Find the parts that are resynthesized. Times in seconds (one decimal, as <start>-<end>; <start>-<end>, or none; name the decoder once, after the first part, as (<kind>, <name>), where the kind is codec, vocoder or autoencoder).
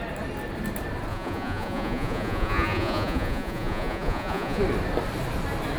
1.1-4.6 (vocoder, Vocos)